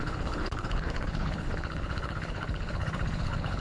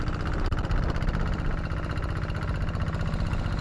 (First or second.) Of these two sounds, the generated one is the first